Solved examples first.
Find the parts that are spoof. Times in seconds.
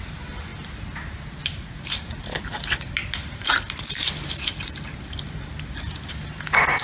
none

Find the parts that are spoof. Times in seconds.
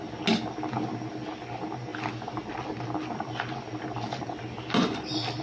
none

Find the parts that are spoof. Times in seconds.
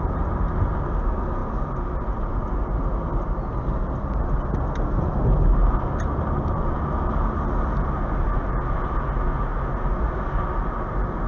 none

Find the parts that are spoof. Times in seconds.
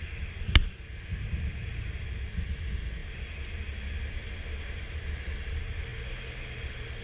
none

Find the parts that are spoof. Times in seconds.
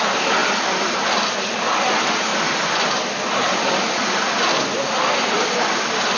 0.4-1.8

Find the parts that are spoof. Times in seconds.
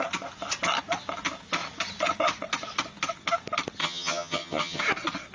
3.8-4.8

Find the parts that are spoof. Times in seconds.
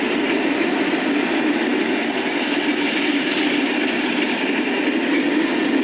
none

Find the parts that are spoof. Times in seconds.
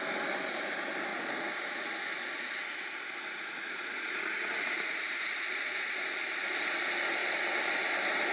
1.1-5.9